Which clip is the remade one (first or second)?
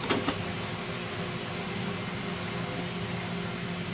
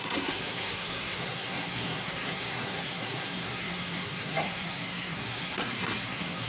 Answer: second